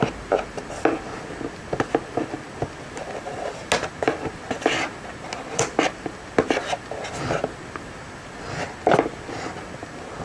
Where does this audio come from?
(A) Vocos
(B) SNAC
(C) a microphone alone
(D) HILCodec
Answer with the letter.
C